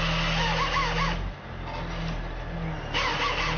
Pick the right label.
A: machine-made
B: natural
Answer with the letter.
B